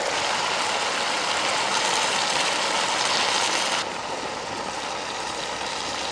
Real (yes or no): yes